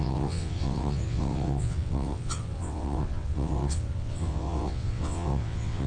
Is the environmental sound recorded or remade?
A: remade